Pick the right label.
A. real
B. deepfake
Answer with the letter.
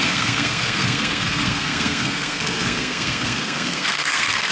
B